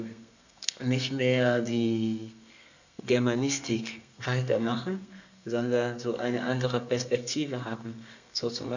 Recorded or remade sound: remade